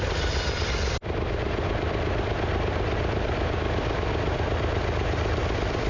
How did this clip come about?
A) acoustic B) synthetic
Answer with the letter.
A